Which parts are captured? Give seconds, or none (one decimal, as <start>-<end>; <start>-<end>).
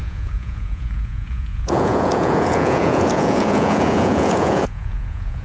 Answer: none